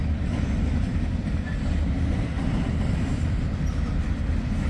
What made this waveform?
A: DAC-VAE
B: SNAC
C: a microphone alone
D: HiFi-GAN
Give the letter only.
C